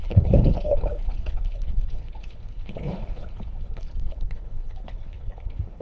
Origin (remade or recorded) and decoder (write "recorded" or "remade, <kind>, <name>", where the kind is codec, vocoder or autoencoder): remade, codec, HILCodec